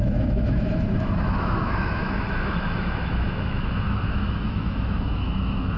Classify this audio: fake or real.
fake